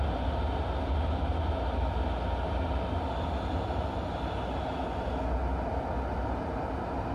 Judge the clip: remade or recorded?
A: recorded